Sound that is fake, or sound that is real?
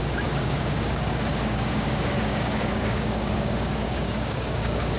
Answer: fake